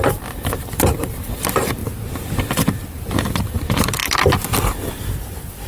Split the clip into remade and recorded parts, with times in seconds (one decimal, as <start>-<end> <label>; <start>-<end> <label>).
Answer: 0.0-1.8 remade; 1.8-3.4 recorded; 3.4-5.7 remade